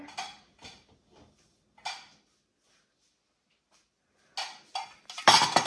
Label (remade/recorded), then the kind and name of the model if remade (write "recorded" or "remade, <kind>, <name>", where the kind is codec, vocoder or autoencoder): recorded